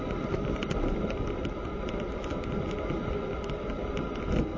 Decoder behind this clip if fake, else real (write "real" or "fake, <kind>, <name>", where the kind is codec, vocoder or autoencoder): real